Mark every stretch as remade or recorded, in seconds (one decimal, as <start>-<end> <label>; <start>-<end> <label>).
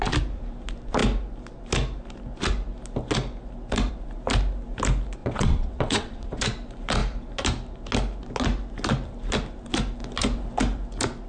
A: 0.0-5.2 recorded; 5.2-6.4 remade; 6.4-11.3 recorded